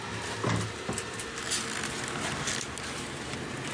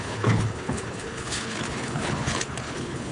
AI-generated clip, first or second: second